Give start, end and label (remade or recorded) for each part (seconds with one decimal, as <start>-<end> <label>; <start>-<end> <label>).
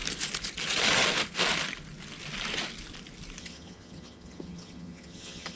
0.0-3.4 recorded; 3.4-5.6 remade